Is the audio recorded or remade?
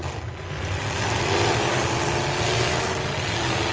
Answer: recorded